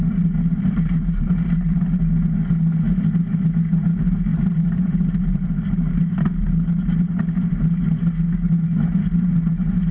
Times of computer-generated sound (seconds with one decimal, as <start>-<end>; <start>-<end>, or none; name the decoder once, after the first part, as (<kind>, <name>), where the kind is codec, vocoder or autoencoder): 0.5-1.8 (vocoder, BigVGAN v2); 4.3-7.9